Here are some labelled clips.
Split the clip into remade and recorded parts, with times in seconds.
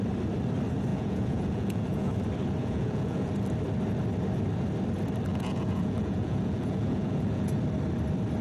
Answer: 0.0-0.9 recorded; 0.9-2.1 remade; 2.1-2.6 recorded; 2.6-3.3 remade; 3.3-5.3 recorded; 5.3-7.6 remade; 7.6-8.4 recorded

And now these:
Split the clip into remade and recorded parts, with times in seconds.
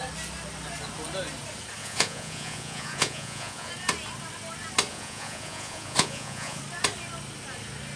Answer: 0.0-1.8 recorded; 1.8-3.7 remade; 3.7-4.9 recorded; 4.9-6.6 remade; 6.6-8.0 recorded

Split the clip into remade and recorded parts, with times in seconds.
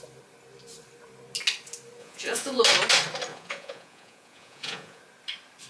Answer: 0.0-2.0 recorded; 2.0-2.6 remade; 2.6-3.3 recorded; 3.3-5.0 remade; 5.0-5.7 recorded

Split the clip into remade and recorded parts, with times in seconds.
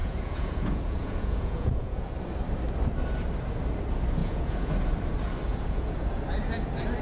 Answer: 0.0-2.1 remade; 2.1-4.2 recorded; 4.2-4.7 remade; 4.7-5.5 recorded; 5.5-6.1 remade; 6.1-7.0 recorded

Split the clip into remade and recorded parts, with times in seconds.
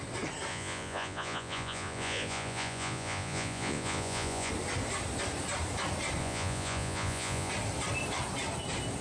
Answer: 0.0-0.5 recorded; 0.5-4.5 remade; 4.5-6.2 recorded; 6.2-7.5 remade; 7.5-9.0 recorded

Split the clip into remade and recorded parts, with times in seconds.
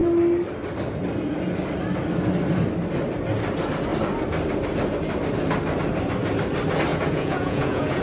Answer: 0.0-6.9 recorded; 6.9-8.0 remade